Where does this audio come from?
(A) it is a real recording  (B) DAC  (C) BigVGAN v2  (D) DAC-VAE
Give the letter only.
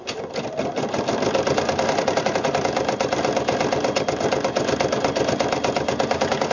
A